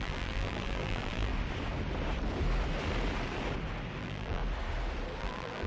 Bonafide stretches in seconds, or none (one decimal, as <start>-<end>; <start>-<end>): 1.3-4.0; 4.4-5.2